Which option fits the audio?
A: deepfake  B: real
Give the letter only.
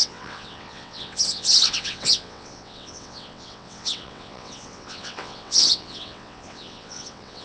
A